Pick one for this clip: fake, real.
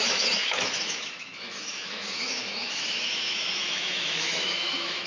fake